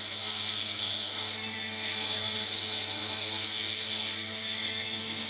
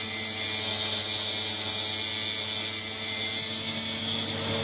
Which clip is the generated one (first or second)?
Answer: first